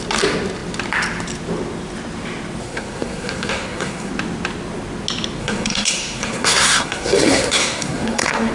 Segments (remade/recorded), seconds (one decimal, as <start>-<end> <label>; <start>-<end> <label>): 0.0-2.6 recorded; 2.6-4.1 remade; 4.1-5.4 recorded; 5.4-8.5 remade